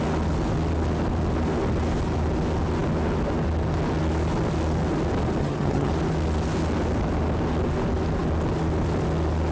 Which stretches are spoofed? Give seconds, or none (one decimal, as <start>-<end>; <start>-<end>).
5.4-5.9